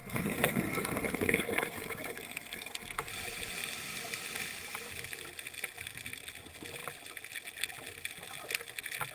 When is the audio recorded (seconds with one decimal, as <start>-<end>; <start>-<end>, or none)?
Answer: 3.1-9.1